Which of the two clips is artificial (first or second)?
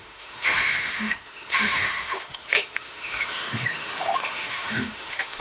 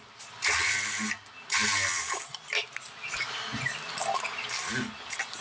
first